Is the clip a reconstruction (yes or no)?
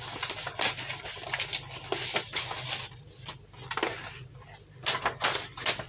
no